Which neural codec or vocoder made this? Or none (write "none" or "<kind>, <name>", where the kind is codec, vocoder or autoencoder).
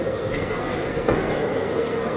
codec, SNAC